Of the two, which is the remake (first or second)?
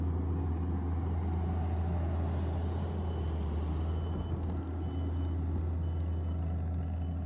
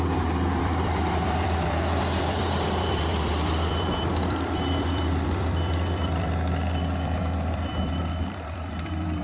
second